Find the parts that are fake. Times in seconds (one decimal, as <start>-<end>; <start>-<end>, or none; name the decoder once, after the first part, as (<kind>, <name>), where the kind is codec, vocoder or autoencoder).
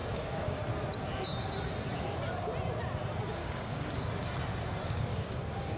0.0-0.6 (codec, DAC); 3.4-4.1; 5.1-5.8